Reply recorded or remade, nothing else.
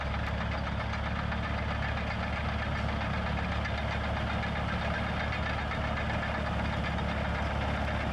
recorded